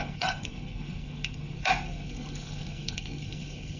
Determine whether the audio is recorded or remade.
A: remade